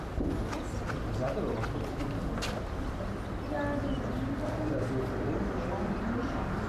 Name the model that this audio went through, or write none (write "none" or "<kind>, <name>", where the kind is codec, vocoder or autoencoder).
none